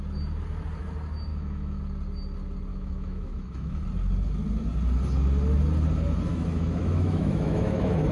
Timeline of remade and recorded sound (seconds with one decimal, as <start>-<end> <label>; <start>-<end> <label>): 0.0-1.3 recorded; 1.3-1.8 remade; 1.8-2.7 recorded; 2.7-3.8 remade; 3.8-6.3 recorded; 6.3-8.1 remade